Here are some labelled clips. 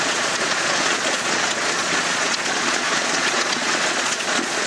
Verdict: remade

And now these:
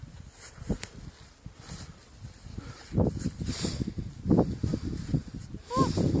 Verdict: recorded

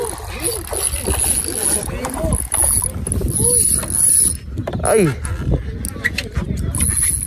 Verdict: recorded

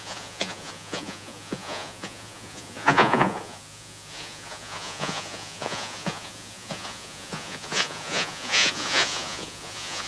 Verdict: remade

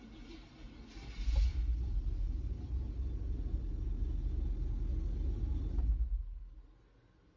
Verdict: recorded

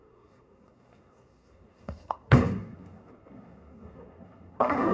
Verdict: remade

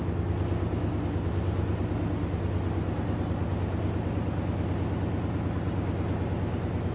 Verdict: recorded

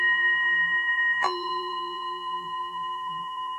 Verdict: remade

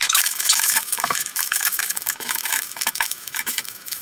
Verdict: remade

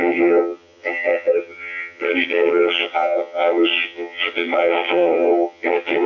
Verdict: remade